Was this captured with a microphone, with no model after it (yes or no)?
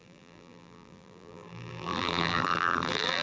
no